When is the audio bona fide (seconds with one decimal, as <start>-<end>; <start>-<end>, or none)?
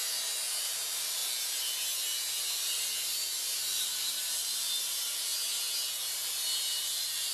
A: 0.0-0.6; 1.2-2.4; 5.3-6.1